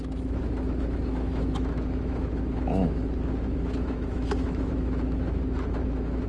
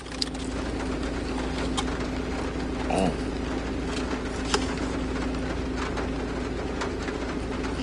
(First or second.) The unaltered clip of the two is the second